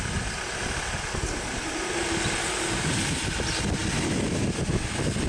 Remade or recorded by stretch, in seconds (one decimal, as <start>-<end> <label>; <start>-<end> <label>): 0.0-5.3 recorded